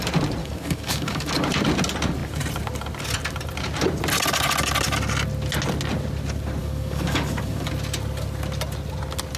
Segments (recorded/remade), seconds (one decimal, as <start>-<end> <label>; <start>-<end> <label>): 0.0-0.4 recorded; 0.4-1.3 remade; 1.3-6.6 recorded; 6.6-7.7 remade; 7.7-9.4 recorded